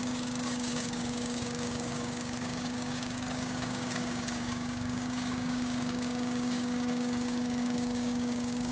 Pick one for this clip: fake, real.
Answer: fake